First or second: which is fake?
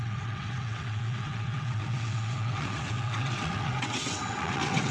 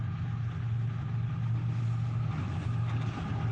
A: first